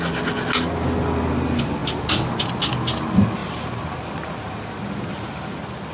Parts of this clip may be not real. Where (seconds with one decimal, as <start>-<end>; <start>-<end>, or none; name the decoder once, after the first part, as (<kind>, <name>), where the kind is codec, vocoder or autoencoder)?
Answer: none